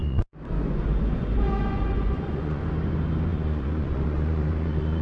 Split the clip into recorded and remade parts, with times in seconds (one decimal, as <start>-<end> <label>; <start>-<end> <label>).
0.0-2.6 remade; 2.6-3.3 recorded; 3.3-5.0 remade